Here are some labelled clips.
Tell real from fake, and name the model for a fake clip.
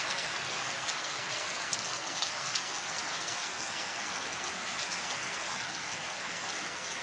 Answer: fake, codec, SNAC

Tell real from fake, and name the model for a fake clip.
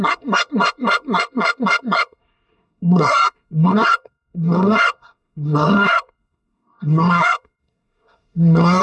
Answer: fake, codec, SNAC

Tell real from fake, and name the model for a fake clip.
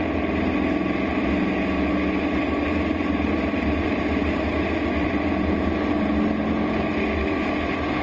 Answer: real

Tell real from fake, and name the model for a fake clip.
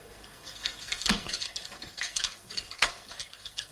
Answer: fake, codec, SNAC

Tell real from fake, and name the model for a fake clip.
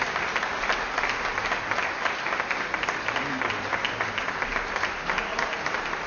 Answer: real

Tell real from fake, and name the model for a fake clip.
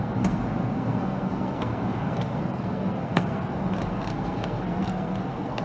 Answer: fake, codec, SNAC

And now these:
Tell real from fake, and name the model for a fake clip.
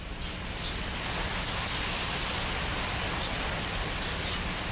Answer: real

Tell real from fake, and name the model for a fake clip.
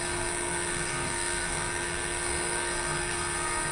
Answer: fake, codec, SNAC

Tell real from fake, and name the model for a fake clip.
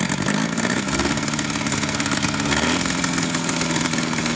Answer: fake, codec, SNAC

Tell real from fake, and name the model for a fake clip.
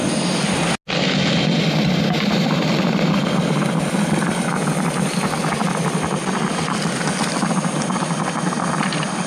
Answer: real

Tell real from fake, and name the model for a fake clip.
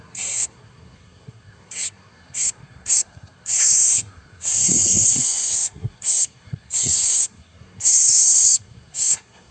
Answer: fake, codec, SNAC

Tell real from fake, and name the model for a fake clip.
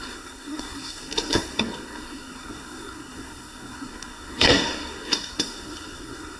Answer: fake, codec, SNAC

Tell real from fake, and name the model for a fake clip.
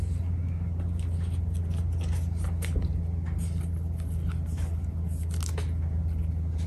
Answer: real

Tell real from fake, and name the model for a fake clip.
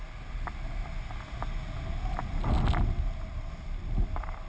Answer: real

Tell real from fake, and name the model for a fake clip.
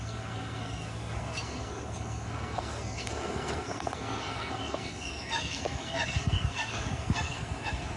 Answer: fake, codec, SNAC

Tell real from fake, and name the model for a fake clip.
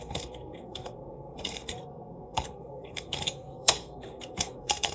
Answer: fake, codec, SNAC